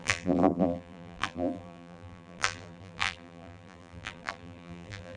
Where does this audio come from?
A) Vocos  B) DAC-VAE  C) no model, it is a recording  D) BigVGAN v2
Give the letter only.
D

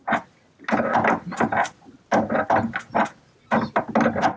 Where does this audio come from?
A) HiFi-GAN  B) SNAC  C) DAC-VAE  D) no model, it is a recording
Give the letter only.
D